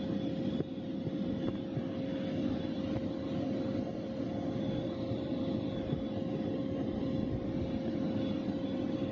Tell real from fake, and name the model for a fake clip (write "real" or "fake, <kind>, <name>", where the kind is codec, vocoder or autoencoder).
real